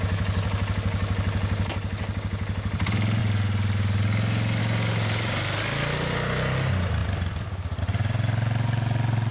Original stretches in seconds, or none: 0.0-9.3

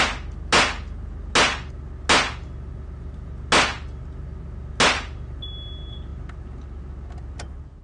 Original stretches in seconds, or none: 0.0-7.8

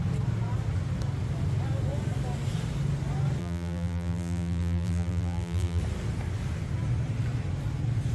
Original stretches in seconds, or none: 0.0-3.4; 5.8-8.1

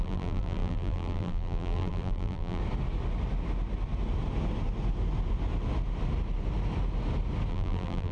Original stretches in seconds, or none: 2.6-7.5